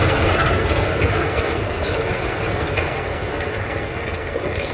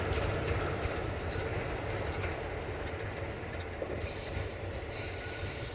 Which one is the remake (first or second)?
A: first